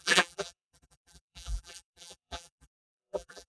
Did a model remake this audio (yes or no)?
yes